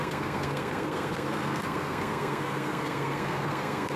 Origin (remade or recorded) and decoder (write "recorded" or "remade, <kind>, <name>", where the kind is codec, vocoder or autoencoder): remade, codec, SNAC